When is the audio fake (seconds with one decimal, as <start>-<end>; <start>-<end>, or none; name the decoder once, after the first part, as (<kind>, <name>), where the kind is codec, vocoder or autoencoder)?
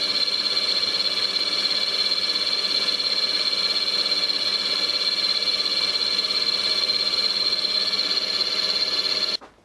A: none